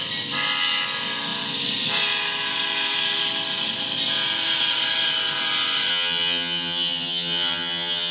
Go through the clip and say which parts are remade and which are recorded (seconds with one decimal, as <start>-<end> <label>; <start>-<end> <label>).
0.0-5.9 recorded; 5.9-8.1 remade